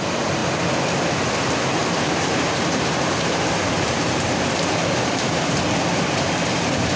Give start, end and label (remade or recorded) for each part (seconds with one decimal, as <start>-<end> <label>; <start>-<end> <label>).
0.0-1.8 recorded; 1.8-6.0 remade; 6.0-7.0 recorded

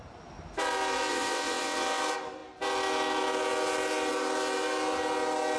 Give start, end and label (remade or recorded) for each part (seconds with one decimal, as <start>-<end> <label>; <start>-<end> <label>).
0.0-1.1 recorded; 1.1-2.0 remade; 2.0-5.6 recorded

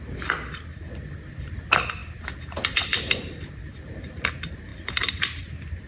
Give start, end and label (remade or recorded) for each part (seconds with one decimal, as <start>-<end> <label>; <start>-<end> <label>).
0.0-5.9 recorded